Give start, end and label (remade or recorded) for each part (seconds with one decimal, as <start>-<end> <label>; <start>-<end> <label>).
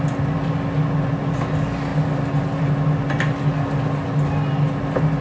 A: 0.0-5.2 recorded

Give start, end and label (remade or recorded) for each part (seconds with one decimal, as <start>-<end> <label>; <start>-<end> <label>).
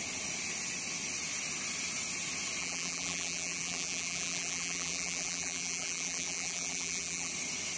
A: 0.0-2.6 recorded; 2.6-7.3 remade; 7.3-7.8 recorded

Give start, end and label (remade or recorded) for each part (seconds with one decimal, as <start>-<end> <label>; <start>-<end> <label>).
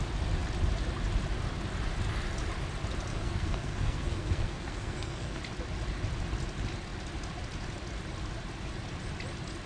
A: 0.0-3.1 recorded; 3.1-5.4 remade; 5.4-9.7 recorded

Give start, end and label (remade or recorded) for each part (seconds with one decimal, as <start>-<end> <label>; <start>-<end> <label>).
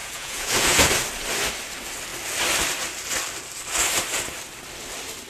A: 0.0-0.9 remade; 0.9-5.3 recorded